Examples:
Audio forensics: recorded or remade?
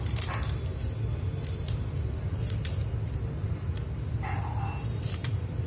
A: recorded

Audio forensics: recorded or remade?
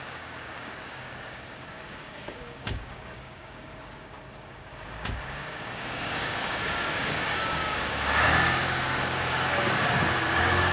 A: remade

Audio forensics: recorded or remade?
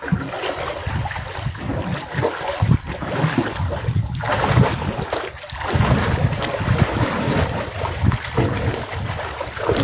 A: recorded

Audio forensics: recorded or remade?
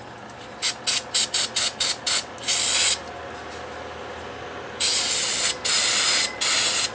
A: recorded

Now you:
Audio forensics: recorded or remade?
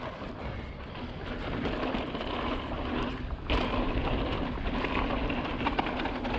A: recorded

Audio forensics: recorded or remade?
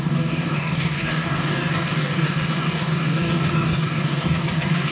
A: remade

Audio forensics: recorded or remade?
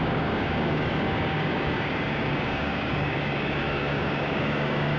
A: remade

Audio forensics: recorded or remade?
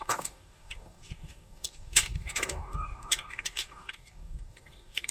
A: remade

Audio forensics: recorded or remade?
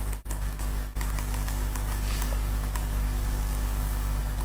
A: remade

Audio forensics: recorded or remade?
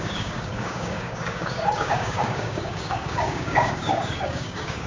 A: remade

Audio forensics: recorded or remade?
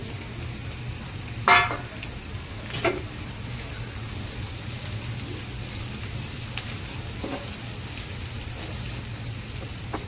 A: recorded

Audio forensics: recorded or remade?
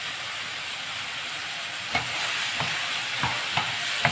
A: recorded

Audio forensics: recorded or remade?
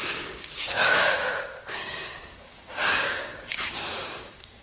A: remade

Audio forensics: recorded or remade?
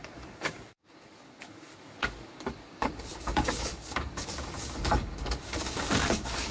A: remade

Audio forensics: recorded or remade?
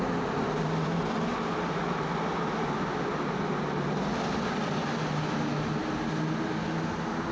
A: recorded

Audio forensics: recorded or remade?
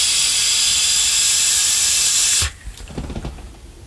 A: recorded